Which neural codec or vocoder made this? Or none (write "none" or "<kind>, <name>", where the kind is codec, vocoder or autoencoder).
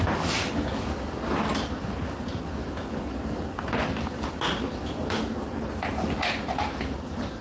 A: none